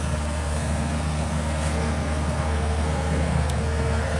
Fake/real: fake